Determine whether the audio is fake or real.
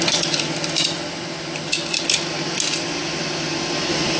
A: real